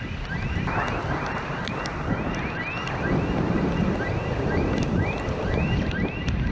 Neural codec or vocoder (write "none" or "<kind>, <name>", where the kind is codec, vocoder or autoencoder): none